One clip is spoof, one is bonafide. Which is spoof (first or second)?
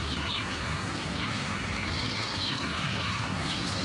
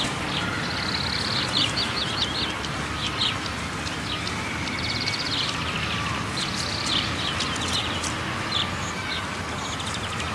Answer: first